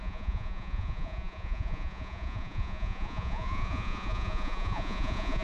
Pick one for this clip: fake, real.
fake